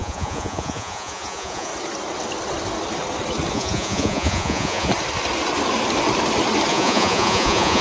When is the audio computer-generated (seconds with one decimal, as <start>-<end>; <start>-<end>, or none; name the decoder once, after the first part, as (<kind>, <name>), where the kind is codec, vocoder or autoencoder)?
0.0-1.7 (vocoder, Vocos); 3.5-4.9; 6.7-7.8